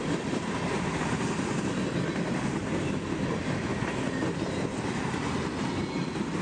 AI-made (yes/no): no